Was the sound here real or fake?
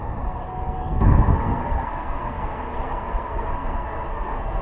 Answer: fake